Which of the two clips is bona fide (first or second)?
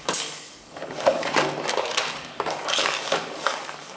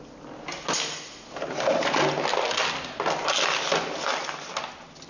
second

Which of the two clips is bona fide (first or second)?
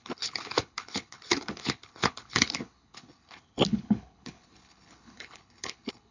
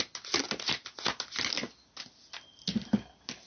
second